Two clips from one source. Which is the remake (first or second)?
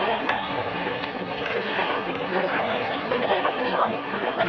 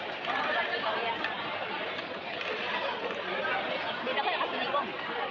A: first